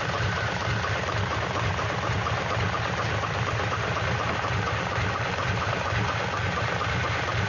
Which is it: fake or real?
fake